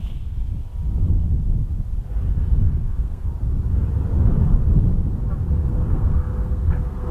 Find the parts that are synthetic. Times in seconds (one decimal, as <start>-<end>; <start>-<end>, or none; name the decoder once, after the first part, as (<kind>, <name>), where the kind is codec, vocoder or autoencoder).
0.0-0.5 (codec, SNAC); 2.3-3.3; 5.5-7.1